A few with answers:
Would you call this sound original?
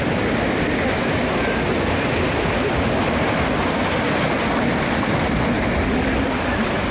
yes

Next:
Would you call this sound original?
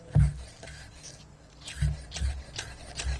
yes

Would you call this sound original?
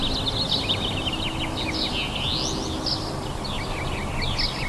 yes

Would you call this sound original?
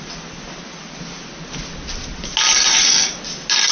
yes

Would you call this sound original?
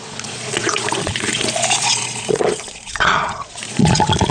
no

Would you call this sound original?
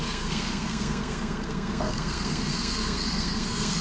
no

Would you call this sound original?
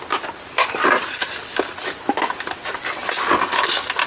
yes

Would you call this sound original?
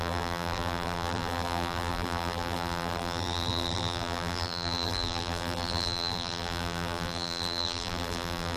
no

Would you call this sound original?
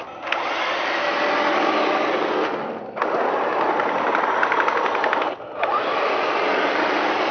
yes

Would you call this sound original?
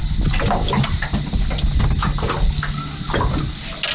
yes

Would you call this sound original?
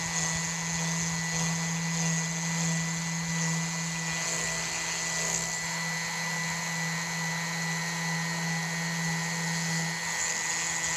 yes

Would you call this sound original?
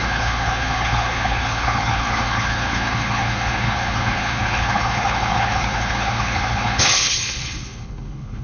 no